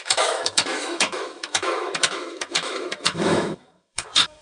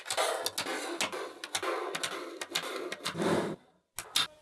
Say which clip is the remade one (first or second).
first